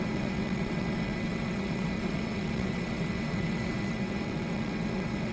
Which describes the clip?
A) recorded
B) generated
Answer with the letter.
B